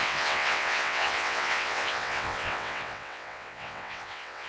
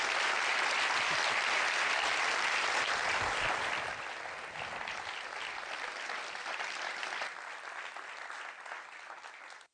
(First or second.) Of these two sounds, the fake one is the first